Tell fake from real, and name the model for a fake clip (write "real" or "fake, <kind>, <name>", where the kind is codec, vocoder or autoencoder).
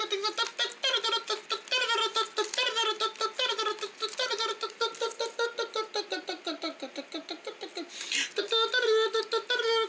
real